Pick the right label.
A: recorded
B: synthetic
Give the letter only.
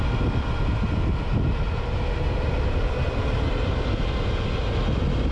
A